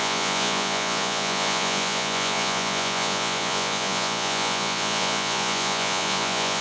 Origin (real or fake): fake